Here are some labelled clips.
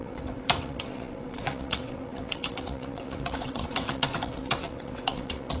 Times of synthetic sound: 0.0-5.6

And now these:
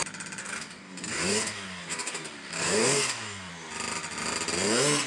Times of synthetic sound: 0.4-3.5

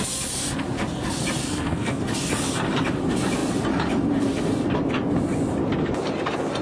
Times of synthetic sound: 1.4-2.0

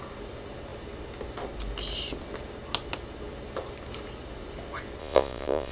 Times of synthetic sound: 5.0-5.7

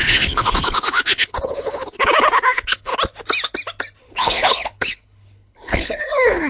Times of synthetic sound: 0.0-2.9; 4.0-6.5

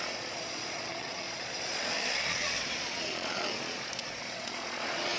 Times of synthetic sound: 0.0-1.8; 2.3-5.2

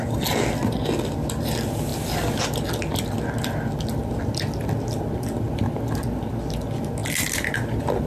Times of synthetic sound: none